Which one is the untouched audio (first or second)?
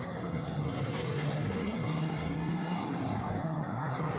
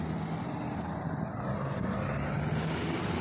second